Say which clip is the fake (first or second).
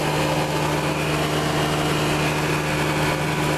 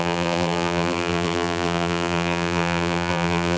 second